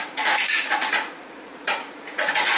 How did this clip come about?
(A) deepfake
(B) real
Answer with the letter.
A